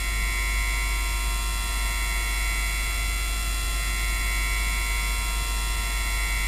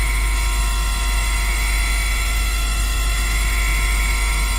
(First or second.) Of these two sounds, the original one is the first